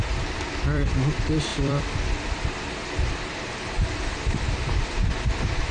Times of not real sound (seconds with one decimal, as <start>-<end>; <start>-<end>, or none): 0.0-5.7